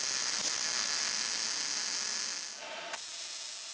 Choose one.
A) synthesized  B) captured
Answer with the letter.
B